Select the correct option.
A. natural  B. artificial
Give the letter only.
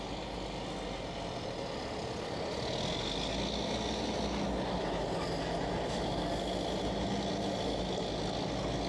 A